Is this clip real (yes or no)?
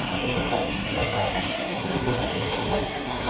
no